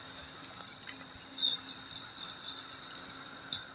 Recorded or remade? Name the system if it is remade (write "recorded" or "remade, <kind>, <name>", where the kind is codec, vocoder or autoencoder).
recorded